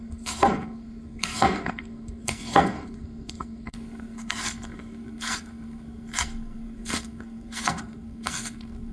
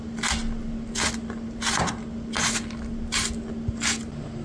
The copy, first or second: first